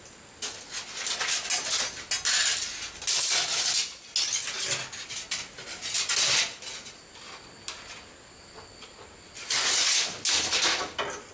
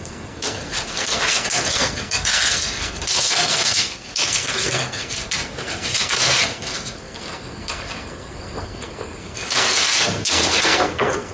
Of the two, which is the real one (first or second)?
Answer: first